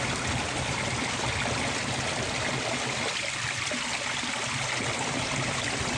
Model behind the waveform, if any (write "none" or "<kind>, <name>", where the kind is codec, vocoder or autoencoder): none